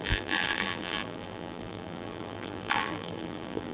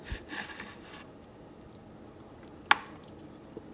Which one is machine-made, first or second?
first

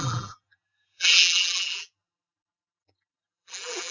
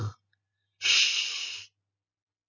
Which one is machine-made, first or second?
first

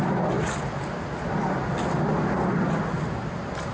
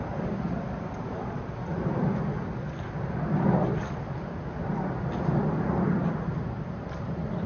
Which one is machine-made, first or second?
second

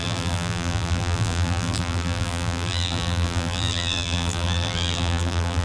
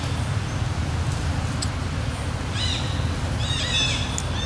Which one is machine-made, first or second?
first